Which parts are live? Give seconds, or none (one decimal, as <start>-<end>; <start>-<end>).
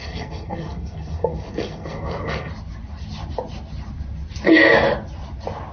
2.5-5.7